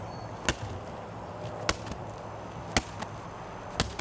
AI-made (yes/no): no